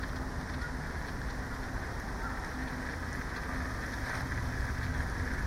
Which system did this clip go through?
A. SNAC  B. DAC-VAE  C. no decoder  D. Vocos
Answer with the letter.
C